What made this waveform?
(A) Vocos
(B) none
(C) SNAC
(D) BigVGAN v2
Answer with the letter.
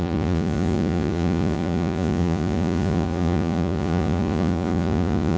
A